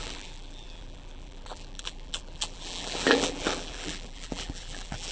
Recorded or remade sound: remade